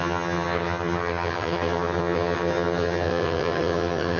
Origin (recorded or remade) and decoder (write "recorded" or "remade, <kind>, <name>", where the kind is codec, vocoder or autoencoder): remade, vocoder, HiFi-GAN